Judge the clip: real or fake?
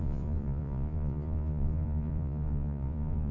fake